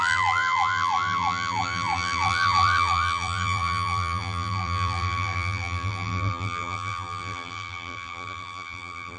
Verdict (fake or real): fake